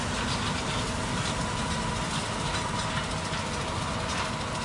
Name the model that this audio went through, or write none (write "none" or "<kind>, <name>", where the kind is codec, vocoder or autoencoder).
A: none